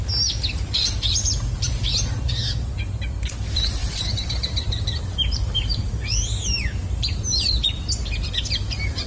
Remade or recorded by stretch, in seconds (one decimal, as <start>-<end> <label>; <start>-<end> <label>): 0.0-3.8 recorded; 3.8-7.5 remade; 7.5-9.1 recorded